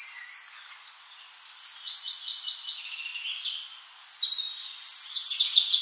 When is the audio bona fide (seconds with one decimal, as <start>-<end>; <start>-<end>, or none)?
0.0-5.8